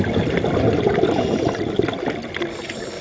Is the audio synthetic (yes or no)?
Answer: no